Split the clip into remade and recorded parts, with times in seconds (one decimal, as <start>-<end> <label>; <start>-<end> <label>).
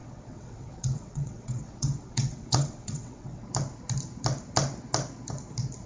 0.0-3.4 remade; 3.4-5.9 recorded